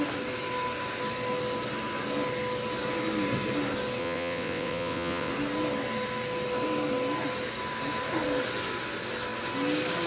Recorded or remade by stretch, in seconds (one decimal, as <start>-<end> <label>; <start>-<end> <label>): 0.0-4.0 recorded; 4.0-5.3 remade; 5.3-10.1 recorded